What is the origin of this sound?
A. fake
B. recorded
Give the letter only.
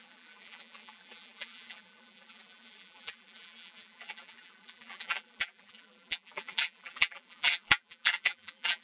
A